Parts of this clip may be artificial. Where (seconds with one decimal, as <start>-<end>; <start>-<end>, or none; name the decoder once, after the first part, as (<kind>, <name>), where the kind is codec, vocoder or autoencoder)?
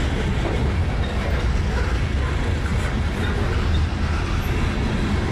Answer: none